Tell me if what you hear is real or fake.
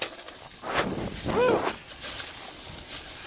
real